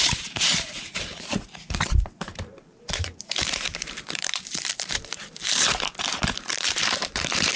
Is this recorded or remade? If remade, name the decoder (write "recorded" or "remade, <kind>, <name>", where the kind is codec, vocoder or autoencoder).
remade, vocoder, BigVGAN v2